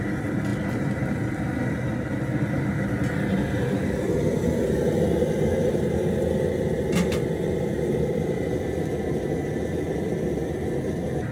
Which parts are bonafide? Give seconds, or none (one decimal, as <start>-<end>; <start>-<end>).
0.0-11.3